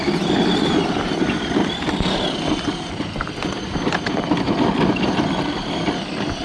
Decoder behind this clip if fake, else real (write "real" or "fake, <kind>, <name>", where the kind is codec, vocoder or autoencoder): real